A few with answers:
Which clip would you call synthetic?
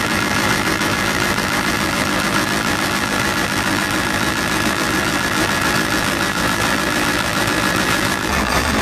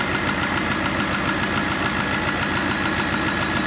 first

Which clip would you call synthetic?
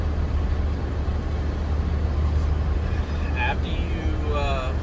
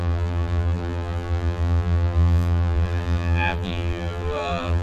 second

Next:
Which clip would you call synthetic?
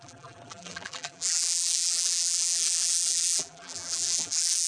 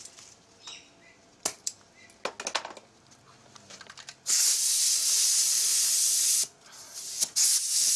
first